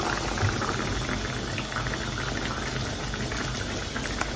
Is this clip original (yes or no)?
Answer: yes